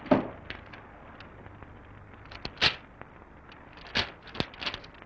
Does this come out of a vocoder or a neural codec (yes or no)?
no